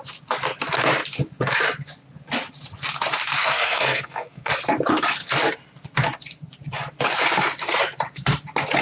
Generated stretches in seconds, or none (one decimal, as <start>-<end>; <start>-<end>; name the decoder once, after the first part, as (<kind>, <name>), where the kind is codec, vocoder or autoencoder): 3.4-4.5 (codec, SNAC)